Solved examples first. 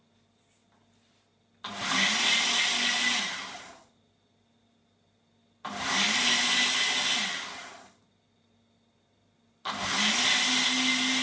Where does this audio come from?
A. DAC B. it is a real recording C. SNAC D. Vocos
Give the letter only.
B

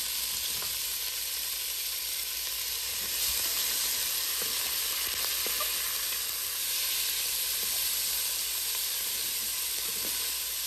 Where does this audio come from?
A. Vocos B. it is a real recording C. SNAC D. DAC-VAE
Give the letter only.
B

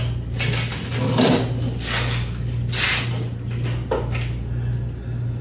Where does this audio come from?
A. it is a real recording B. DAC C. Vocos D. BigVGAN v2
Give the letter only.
A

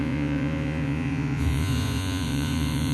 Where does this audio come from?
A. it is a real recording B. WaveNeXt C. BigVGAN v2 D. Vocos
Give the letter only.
D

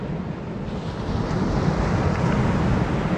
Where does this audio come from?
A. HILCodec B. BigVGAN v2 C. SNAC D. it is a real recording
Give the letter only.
D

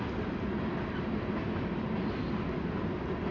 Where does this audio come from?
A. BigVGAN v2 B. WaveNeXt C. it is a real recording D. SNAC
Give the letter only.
C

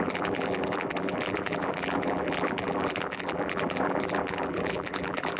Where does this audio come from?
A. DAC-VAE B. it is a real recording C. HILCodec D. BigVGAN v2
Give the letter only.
D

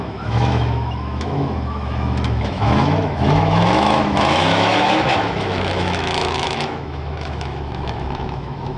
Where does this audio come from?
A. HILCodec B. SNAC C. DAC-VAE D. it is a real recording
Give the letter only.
C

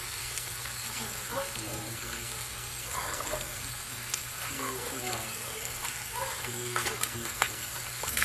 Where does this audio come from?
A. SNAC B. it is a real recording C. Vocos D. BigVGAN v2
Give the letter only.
A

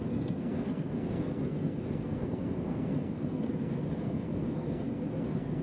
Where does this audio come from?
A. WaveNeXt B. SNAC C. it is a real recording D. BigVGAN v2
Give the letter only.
B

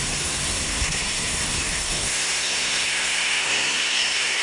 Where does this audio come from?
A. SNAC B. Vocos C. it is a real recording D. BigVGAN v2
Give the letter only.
A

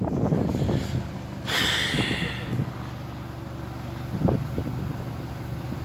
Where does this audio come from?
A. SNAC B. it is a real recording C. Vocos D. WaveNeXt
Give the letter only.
B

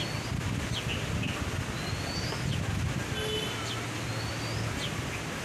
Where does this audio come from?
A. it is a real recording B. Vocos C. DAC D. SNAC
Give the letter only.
A